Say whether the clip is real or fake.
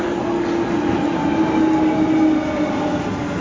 real